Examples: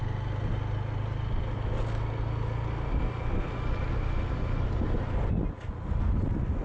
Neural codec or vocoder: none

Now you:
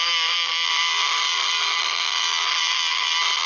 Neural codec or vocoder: none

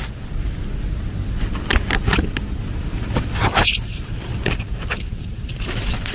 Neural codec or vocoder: none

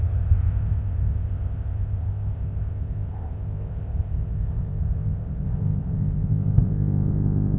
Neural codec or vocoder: codec, ZipCodec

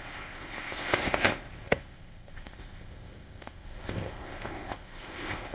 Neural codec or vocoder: codec, ZipCodec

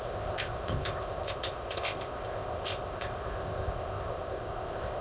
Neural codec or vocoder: codec, ZipCodec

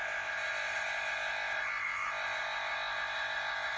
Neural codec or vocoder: codec, ZipCodec